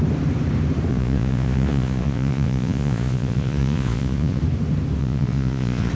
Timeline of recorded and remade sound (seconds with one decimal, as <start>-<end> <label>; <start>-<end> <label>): 0.0-0.9 recorded; 0.9-4.4 remade; 4.4-5.0 recorded; 5.0-5.9 remade

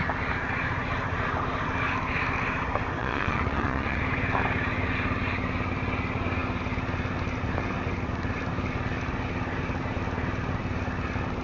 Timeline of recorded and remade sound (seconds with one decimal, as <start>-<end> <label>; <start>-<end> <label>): 0.0-3.0 recorded; 3.0-4.0 remade; 4.0-11.4 recorded